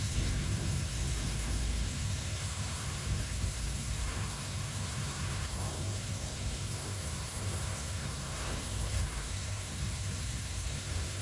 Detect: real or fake fake